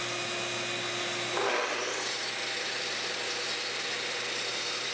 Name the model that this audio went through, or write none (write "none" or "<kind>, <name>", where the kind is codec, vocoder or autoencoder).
none